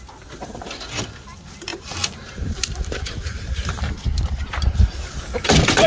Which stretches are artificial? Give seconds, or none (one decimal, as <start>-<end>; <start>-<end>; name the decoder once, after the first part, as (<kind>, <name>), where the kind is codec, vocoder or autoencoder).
1.7-5.2 (vocoder, BigVGAN v2)